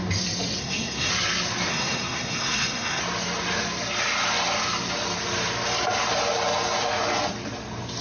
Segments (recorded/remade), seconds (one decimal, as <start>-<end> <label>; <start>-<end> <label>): 0.0-0.6 recorded; 0.6-1.1 remade; 1.1-1.7 recorded; 1.7-3.0 remade; 3.0-8.0 recorded